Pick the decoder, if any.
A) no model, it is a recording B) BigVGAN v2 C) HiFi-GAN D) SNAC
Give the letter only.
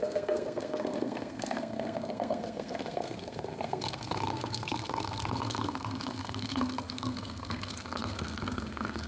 D